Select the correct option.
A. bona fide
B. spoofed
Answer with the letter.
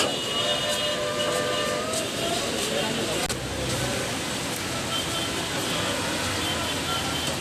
A